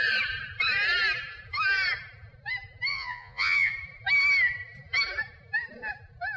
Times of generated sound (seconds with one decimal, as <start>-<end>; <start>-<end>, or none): 2.9-3.7